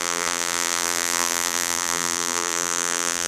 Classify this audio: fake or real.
fake